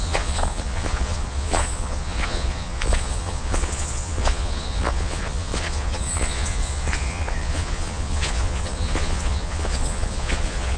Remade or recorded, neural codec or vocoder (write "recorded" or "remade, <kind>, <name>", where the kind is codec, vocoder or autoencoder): remade, vocoder, Vocos